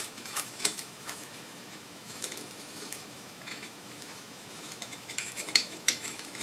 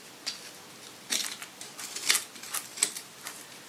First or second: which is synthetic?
first